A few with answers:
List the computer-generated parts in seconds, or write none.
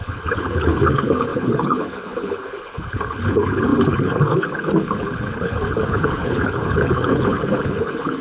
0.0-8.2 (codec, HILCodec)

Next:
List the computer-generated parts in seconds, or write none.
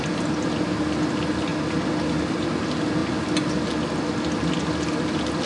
none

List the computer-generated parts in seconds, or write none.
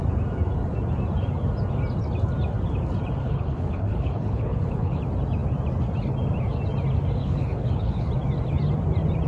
3.2-5.0 (codec, HILCodec); 7.2-8.1